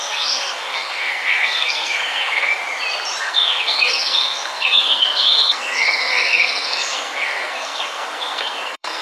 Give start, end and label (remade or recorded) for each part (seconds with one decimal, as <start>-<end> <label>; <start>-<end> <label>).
0.0-2.6 remade; 2.6-3.2 recorded; 3.2-9.0 remade